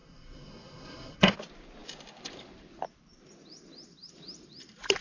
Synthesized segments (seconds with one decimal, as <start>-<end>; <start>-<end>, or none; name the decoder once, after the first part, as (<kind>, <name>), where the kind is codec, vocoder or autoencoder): 0.0-1.3 (codec, SNAC)